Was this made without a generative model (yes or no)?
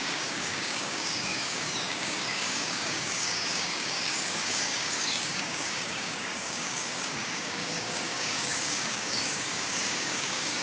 no